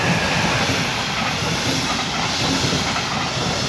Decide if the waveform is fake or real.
real